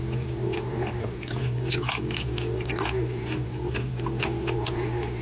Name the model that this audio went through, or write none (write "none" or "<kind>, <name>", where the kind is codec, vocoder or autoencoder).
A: none